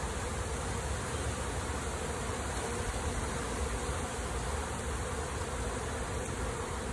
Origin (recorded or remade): recorded